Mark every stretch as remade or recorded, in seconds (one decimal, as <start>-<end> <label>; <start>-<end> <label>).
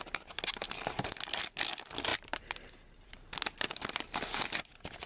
0.0-2.1 recorded; 2.1-3.1 remade; 3.1-5.1 recorded